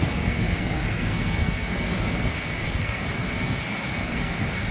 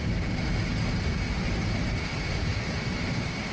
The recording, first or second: second